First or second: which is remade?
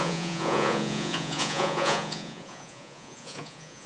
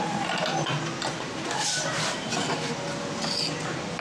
first